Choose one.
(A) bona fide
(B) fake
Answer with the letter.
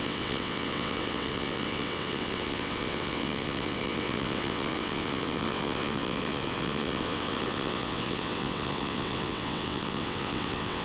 B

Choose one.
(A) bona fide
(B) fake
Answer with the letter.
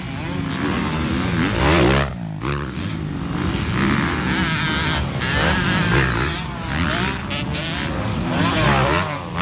A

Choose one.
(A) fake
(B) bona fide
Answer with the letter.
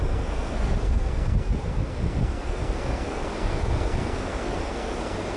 A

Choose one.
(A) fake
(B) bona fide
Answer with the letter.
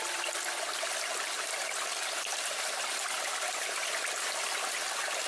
B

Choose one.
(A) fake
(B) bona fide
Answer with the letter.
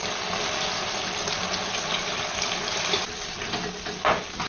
B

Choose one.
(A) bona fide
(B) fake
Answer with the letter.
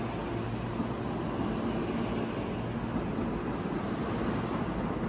A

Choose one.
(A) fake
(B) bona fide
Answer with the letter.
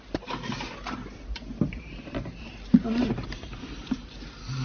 A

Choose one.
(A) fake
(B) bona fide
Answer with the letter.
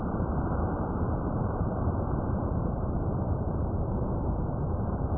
A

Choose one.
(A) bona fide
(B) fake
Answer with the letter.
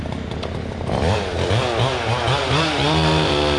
A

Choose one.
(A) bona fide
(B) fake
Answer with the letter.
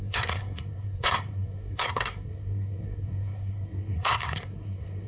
B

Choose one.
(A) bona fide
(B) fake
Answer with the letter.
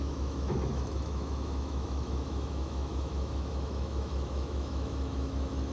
B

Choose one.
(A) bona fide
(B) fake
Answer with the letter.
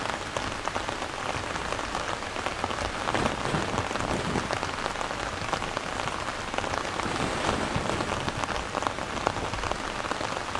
A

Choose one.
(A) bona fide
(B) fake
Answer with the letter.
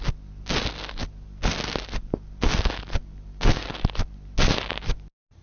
A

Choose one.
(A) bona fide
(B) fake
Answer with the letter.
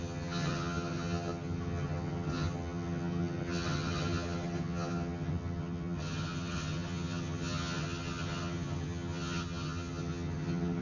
B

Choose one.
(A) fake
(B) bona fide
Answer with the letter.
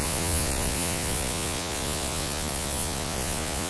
A